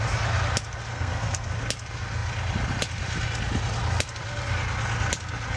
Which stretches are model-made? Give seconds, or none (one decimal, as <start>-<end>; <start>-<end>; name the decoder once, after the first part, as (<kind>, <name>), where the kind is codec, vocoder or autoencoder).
0.9-1.5 (codec, SNAC)